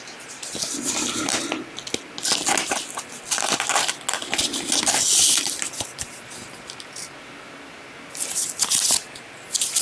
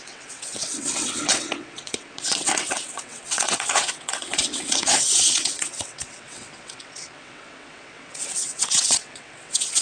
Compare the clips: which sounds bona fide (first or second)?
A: first